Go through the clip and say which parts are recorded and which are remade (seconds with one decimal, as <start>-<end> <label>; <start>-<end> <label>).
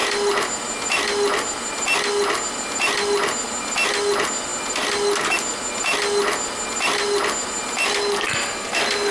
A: 0.0-9.1 recorded